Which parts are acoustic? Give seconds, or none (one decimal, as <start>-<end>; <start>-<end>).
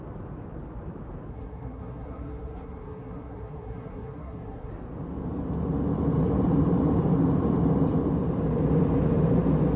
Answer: 0.0-1.3; 4.7-9.8